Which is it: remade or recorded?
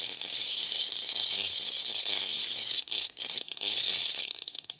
remade